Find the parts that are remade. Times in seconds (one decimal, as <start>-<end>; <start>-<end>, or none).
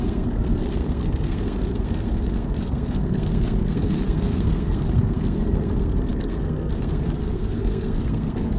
0.0-8.6